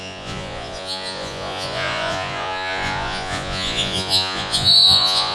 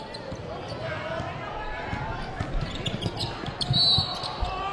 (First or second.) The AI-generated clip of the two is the first